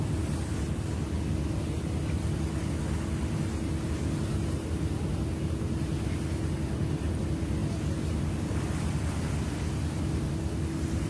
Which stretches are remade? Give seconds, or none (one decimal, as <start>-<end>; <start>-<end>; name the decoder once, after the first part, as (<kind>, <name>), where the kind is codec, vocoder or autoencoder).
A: none

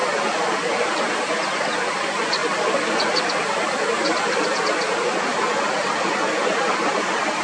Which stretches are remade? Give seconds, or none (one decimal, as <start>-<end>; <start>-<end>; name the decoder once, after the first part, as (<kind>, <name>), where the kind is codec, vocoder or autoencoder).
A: none